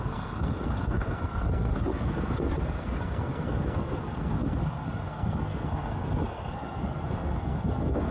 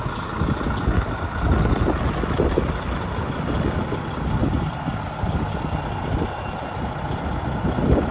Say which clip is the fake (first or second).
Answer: first